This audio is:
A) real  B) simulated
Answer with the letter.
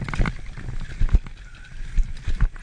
A